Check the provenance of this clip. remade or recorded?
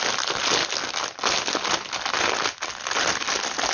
recorded